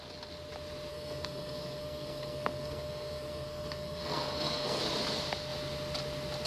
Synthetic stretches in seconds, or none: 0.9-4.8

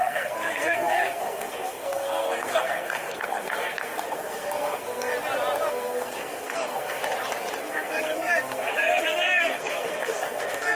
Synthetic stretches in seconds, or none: 0.0-5.1; 5.7-7.0; 7.6-10.8

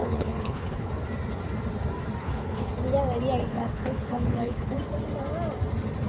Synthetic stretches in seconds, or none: 0.0-0.9; 2.2-2.7; 3.4-4.8

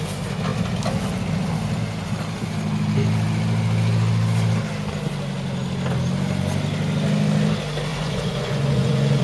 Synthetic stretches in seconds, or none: 7.9-9.2

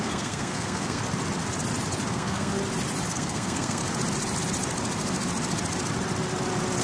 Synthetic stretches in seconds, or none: 0.0-1.0; 2.1-2.5; 3.1-3.8